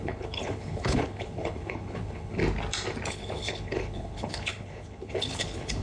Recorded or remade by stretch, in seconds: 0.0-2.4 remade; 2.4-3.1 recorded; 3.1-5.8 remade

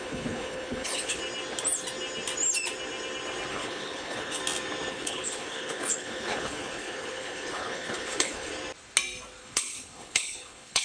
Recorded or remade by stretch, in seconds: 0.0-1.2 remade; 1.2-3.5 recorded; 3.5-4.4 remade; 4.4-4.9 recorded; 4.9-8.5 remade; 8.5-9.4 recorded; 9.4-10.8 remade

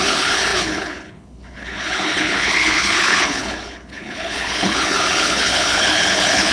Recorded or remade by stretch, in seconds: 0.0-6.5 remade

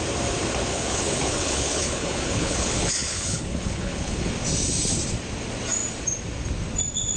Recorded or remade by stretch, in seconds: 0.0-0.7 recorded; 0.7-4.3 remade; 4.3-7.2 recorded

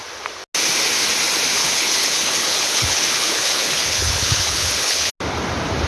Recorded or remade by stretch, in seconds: 0.0-1.6 recorded; 1.6-5.1 remade; 5.1-5.9 recorded

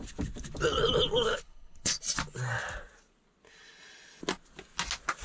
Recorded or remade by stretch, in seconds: 0.0-1.3 recorded; 1.3-2.0 remade; 2.0-5.2 recorded

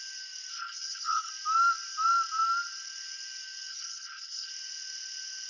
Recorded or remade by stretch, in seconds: 0.0-0.5 recorded; 0.5-1.3 remade; 1.3-3.7 recorded; 3.7-4.5 remade; 4.5-5.5 recorded

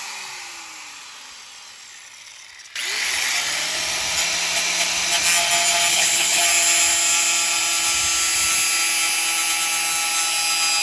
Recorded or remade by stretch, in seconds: 0.0-5.9 recorded; 5.9-6.4 remade; 6.4-10.8 recorded